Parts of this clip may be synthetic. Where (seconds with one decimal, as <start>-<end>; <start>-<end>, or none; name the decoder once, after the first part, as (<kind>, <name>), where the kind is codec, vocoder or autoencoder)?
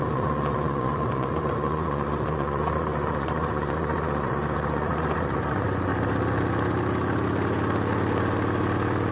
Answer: 0.0-5.9 (vocoder, Vocos)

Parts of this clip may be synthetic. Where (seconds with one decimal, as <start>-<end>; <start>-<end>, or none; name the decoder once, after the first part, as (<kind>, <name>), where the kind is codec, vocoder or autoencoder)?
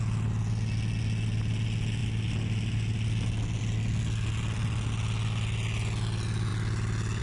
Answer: none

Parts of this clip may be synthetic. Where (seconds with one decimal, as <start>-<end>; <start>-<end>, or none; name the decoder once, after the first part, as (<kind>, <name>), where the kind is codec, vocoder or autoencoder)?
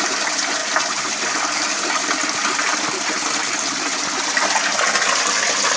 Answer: none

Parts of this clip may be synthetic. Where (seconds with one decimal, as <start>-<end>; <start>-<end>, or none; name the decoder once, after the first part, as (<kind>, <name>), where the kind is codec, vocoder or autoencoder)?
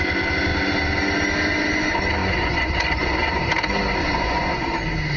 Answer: 2.2-3.5 (vocoder, Vocos); 4.0-4.7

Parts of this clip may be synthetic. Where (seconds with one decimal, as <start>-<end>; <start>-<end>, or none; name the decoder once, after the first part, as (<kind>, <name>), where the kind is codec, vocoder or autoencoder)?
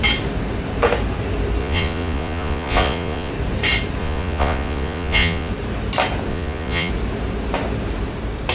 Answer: 1.6-3.3 (vocoder, Vocos); 4.0-5.5; 6.3-6.9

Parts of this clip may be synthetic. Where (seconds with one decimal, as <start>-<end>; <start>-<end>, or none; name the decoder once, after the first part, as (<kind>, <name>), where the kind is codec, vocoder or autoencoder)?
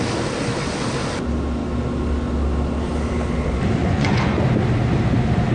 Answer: 3.8-4.4 (vocoder, Vocos)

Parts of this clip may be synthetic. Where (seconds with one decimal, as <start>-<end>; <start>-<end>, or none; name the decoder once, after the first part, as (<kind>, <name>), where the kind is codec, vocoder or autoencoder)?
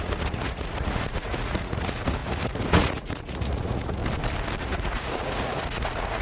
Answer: 0.0-4.0 (vocoder, Vocos); 4.6-6.2